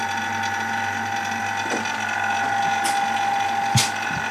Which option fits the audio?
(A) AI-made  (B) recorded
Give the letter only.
B